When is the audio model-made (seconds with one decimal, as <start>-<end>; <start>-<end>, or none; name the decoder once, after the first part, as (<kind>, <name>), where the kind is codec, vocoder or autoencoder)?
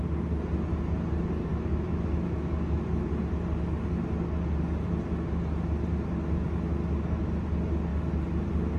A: 1.5-3.1 (autoencoder, DAC-VAE)